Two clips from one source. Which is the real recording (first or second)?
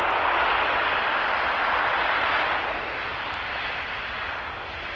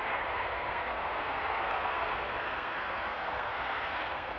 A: first